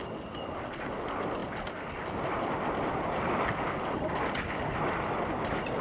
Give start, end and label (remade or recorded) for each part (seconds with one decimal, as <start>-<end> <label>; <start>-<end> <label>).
0.0-5.8 recorded